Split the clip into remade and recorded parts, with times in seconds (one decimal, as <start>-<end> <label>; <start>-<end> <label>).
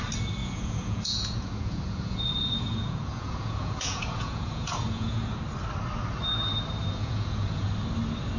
0.0-0.4 recorded; 0.4-5.4 remade; 5.4-7.0 recorded; 7.0-7.7 remade; 7.7-8.4 recorded